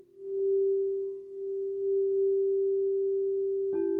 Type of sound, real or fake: real